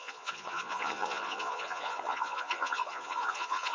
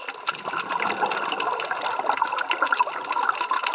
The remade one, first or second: first